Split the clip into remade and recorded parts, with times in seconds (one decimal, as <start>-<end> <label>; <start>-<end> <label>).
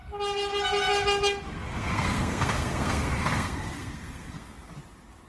0.0-1.5 recorded; 1.5-4.7 remade; 4.7-5.3 recorded